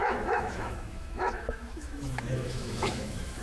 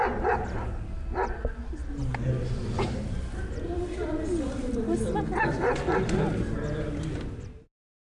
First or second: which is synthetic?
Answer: first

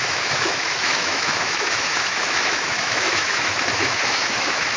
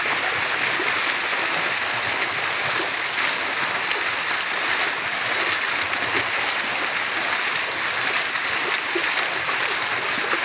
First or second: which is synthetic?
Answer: first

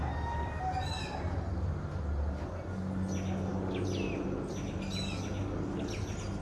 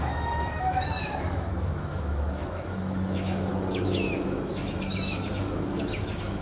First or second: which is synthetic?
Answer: second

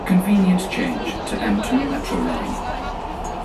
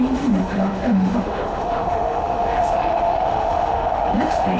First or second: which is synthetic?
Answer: second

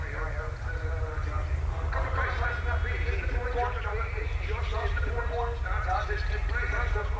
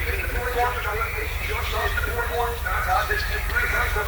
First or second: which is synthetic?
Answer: second